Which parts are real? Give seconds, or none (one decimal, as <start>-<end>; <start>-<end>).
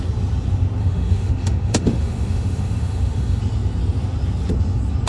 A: 0.0-0.8; 3.4-5.1